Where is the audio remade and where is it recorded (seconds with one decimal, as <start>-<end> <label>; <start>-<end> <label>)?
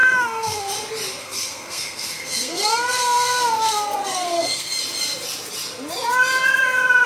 0.0-0.7 remade; 0.7-1.2 recorded; 1.2-4.8 remade; 4.8-7.1 recorded